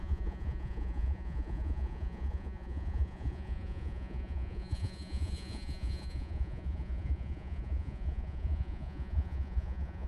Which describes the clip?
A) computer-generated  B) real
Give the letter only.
A